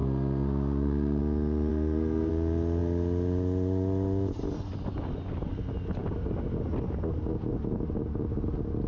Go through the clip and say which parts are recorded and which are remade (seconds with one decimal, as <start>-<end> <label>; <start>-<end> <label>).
0.0-1.2 remade; 1.2-1.7 recorded; 1.7-2.3 remade; 2.3-8.9 recorded